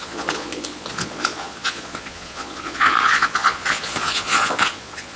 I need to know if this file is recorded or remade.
remade